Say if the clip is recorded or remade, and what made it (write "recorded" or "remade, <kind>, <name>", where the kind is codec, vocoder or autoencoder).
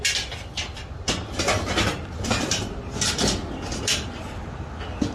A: recorded